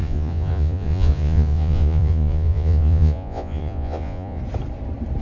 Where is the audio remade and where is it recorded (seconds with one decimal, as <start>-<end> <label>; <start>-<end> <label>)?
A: 0.0-4.4 remade; 4.4-5.2 recorded